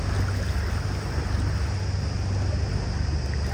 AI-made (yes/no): no